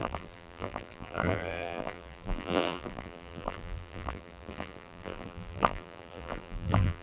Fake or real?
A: fake